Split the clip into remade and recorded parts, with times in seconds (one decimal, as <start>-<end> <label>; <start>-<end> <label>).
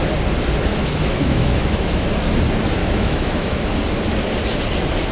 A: 0.0-0.7 recorded; 0.7-2.1 remade; 2.1-2.8 recorded; 2.8-3.7 remade; 3.7-5.1 recorded